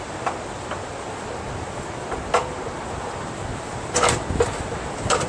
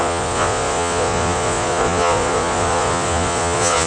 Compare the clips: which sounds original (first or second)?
first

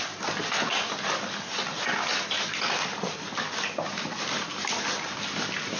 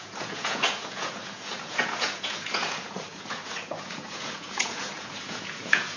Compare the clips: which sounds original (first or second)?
first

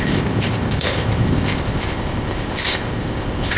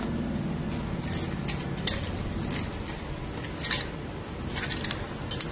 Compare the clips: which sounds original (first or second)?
second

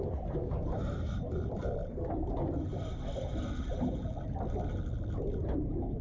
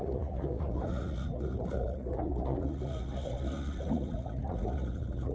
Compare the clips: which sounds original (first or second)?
first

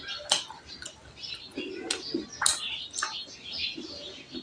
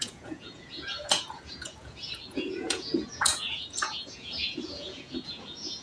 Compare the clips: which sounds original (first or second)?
first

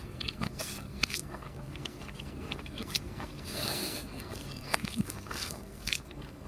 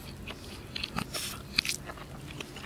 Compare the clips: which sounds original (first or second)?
second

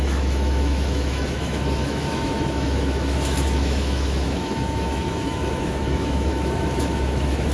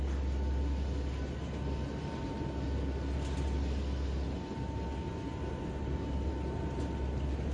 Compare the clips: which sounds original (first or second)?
second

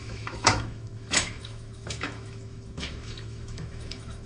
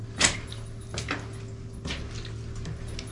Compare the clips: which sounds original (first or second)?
second